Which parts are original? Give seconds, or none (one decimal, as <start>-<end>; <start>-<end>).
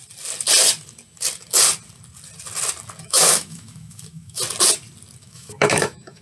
0.0-3.0; 4.4-5.2